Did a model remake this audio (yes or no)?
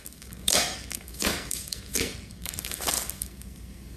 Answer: yes